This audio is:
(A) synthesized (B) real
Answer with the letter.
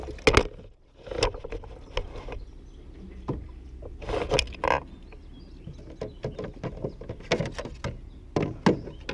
B